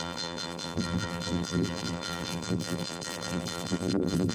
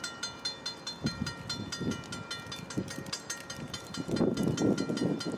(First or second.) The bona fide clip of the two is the second